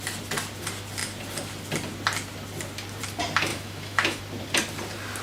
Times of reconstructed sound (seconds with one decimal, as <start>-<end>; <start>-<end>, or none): 3.5-4.2